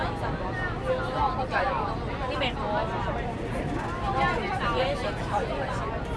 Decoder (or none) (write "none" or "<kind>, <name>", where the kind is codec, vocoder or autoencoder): none